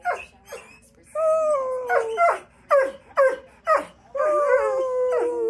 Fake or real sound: real